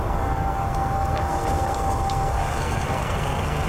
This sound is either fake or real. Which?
fake